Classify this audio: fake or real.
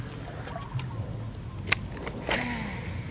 real